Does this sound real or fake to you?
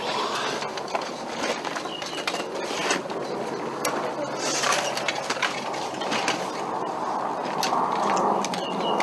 real